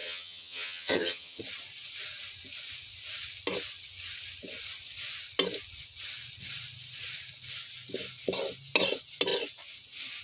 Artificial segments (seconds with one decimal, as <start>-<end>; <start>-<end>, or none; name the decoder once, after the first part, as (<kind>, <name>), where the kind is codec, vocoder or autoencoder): 0.0-1.4 (vocoder, HiFi-GAN)